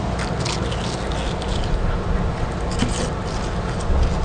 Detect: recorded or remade recorded